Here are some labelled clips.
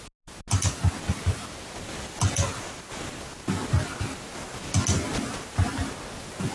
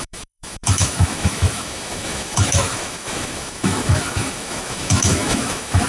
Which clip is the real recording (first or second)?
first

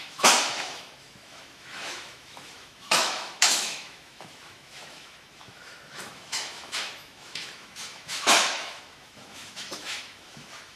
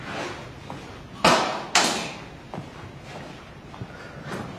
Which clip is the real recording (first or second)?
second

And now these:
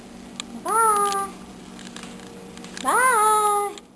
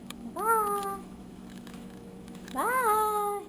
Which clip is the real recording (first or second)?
first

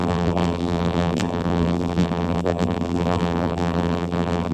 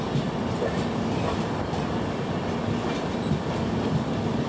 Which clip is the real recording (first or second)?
second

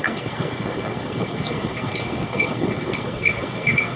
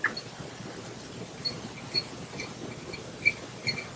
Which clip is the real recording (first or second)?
second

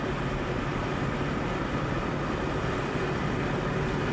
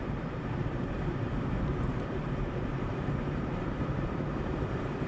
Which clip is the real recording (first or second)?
first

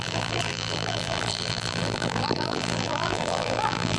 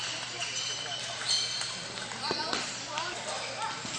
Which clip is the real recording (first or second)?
second